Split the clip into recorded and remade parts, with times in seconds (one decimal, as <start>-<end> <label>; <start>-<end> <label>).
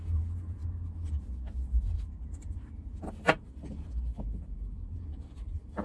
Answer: 0.0-0.6 remade; 0.6-3.1 recorded; 3.1-5.8 remade